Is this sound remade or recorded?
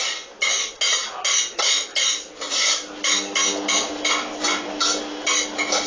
recorded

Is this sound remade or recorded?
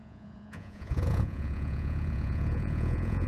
remade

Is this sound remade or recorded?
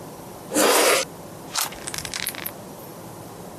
recorded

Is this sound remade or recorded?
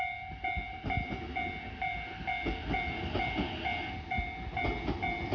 recorded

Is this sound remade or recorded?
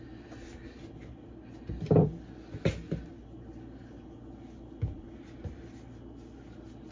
recorded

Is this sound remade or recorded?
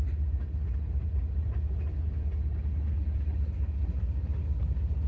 recorded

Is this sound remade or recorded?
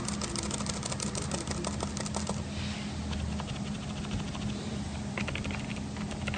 recorded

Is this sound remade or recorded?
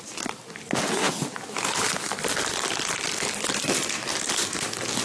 recorded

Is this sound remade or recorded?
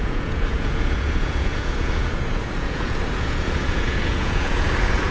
remade